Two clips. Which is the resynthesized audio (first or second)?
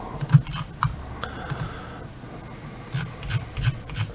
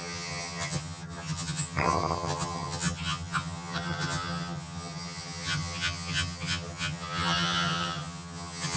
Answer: second